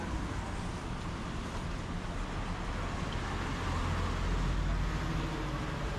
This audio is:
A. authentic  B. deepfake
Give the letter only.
A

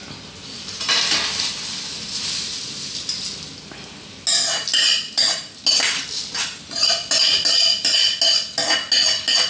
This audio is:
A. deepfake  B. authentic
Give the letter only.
B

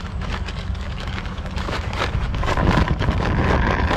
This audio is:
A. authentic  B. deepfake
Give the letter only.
B